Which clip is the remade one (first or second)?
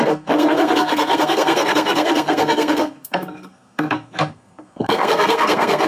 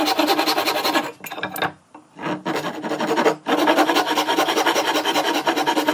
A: first